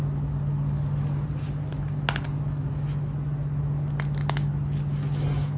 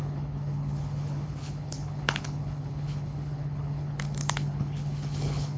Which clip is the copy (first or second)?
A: second